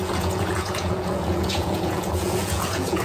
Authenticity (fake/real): fake